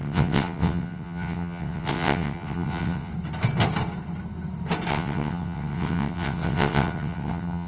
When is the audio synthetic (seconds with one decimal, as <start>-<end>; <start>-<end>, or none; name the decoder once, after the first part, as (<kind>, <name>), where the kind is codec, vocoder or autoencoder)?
0.0-3.1 (vocoder, WaveNeXt); 4.9-7.7